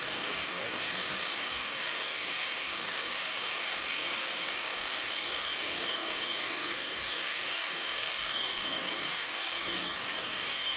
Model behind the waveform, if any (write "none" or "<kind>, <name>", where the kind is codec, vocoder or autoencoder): codec, DAC